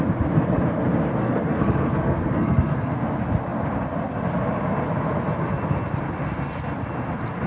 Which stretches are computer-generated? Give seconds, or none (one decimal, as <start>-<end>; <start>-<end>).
1.2-2.9